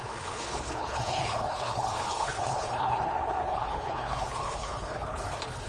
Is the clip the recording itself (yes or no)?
no